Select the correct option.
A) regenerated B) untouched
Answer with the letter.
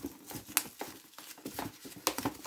B